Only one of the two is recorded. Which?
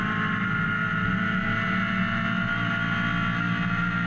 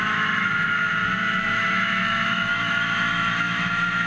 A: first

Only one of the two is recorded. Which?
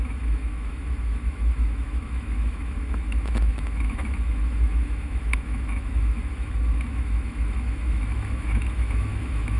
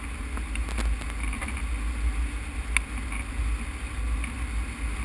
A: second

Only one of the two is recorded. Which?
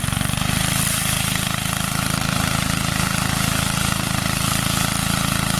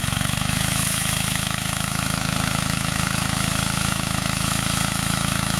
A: first